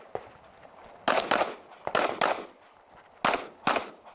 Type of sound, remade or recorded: recorded